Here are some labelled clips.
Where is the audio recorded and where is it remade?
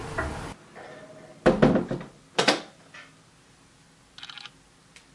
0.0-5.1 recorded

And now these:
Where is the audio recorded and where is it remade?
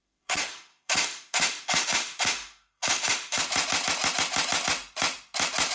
0.0-3.4 remade; 3.4-5.7 recorded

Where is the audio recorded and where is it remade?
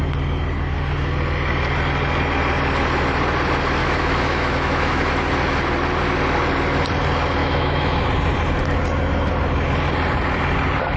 0.0-3.8 recorded; 3.8-5.1 remade; 5.1-7.4 recorded; 7.4-8.1 remade; 8.1-11.0 recorded